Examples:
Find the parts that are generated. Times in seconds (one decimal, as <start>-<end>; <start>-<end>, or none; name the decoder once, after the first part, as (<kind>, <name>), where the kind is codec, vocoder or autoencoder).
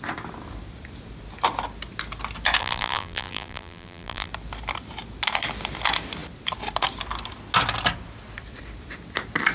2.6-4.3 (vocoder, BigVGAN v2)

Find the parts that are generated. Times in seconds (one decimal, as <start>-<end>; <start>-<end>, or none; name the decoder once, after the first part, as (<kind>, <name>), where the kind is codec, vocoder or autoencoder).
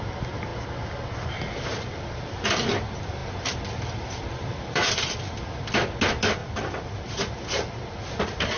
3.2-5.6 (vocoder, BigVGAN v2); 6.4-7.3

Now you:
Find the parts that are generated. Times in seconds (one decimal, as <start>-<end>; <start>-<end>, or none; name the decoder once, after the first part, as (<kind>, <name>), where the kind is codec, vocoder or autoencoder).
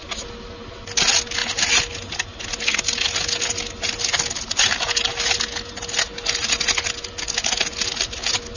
none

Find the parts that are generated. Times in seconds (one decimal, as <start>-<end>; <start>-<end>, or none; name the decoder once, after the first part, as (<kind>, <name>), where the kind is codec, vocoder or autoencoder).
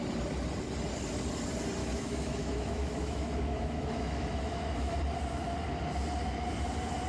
1.8-5.0 (autoencoder, DAC-VAE)